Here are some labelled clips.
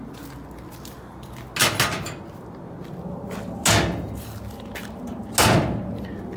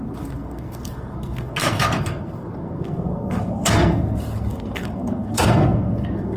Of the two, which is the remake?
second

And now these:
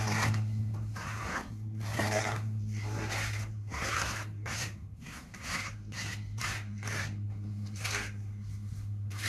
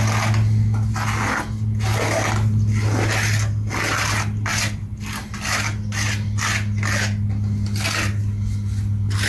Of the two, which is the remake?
first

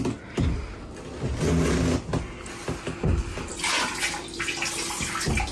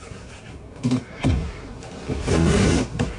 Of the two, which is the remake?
second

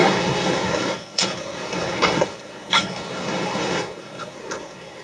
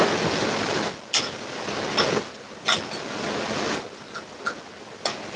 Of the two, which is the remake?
first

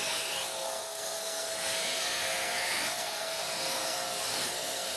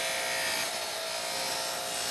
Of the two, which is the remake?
first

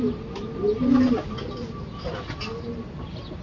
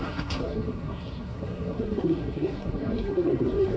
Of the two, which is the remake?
second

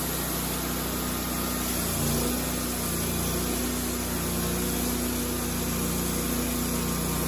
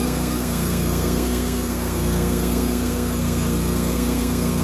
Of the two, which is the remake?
second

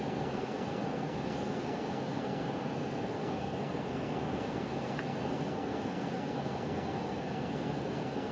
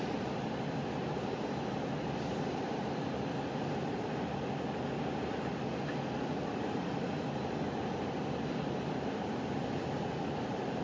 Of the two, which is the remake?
first